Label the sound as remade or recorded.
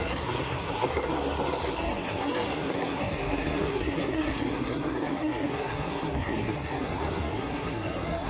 remade